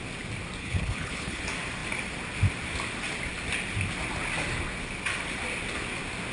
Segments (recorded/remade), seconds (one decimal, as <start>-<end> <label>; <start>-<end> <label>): 0.0-0.6 recorded; 0.6-1.4 remade; 1.4-6.3 recorded